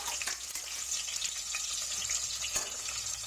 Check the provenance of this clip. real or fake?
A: fake